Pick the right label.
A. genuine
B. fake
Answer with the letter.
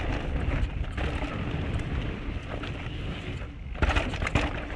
A